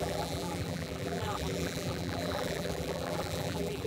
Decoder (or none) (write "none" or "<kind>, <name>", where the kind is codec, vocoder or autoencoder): vocoder, BigVGAN v2